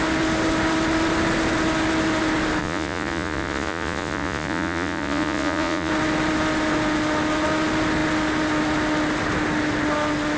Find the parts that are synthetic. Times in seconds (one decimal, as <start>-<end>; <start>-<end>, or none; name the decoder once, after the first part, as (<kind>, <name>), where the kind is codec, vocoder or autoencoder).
2.6-5.9 (vocoder, Vocos)